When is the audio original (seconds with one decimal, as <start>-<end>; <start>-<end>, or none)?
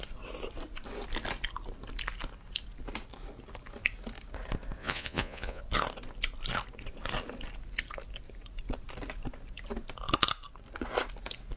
0.0-4.8; 5.6-11.6